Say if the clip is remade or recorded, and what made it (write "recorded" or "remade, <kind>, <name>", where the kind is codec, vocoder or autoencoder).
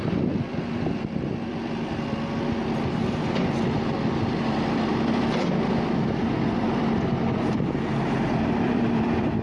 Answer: remade, vocoder, BigVGAN v2